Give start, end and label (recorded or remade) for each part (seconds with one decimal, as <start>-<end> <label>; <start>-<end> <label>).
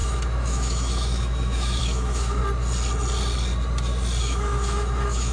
0.0-2.4 remade; 2.4-4.2 recorded; 4.2-5.3 remade